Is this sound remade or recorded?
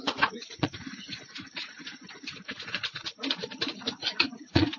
remade